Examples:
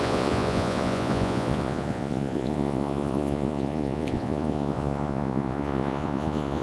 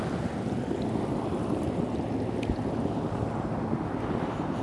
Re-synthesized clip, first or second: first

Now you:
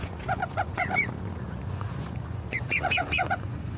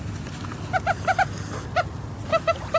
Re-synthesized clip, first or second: first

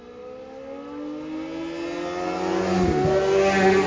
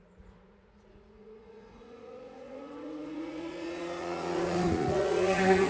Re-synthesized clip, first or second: second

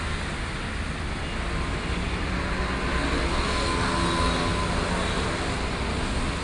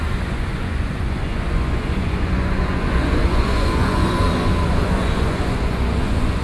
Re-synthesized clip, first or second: second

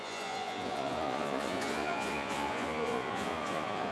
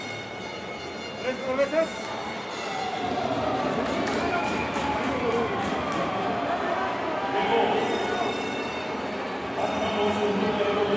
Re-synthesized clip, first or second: first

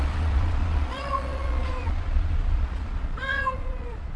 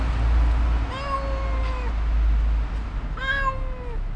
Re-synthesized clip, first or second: first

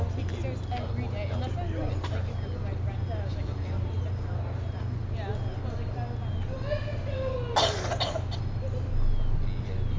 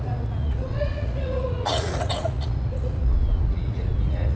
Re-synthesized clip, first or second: second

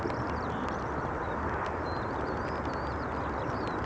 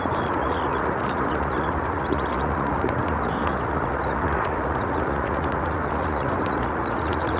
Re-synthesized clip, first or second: second